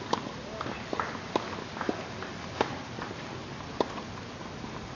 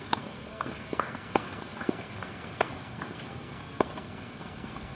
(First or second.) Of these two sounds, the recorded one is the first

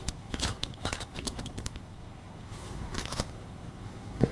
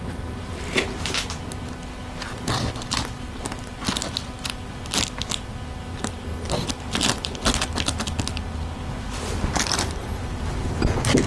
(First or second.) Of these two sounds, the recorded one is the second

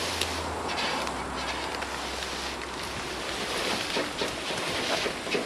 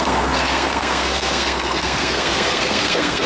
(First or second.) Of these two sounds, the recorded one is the first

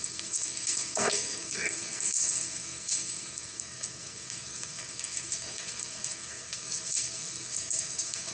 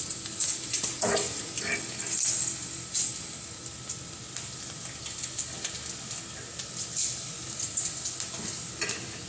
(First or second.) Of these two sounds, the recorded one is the second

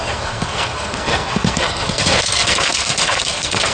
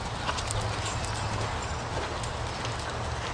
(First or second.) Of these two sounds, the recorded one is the second